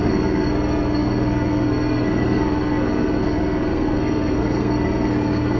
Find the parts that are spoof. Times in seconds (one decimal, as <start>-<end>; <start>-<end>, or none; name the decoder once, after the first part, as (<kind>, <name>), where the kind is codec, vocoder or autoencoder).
0.0-5.6 (codec, SNAC)